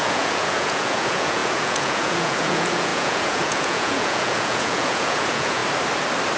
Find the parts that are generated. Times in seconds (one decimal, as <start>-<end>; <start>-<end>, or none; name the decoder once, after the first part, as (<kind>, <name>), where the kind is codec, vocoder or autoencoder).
0.0-5.6 (vocoder, Vocos)